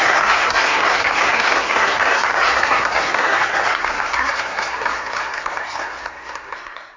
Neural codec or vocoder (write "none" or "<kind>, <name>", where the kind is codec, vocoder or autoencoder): codec, SNAC